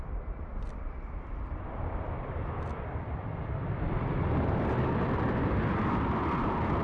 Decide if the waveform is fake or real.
fake